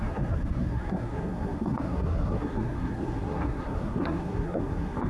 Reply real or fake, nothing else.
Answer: fake